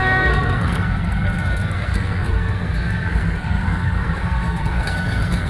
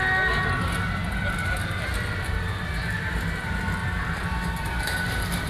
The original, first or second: second